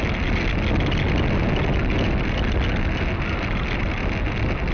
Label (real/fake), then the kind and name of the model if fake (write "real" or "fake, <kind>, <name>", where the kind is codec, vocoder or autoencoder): real